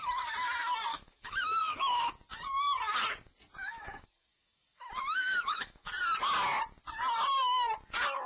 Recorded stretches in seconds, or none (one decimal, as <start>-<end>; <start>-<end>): 0.0-0.9; 2.1-3.6; 5.9-8.3